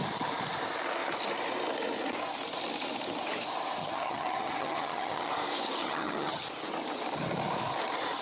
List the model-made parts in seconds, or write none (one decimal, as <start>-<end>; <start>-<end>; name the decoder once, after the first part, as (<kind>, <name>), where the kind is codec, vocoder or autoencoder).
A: 3.8-5.3 (vocoder, HiFi-GAN); 5.8-6.4